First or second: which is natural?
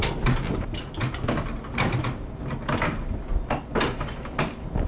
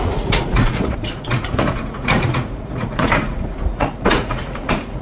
first